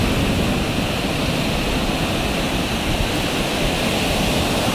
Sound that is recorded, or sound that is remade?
recorded